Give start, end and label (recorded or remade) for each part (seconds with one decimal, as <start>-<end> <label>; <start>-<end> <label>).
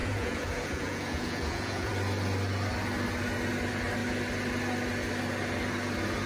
0.0-1.9 remade; 1.9-6.3 recorded